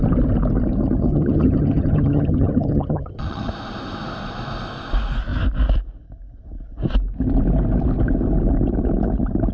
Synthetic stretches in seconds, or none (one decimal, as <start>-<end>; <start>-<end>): 1.1-3.5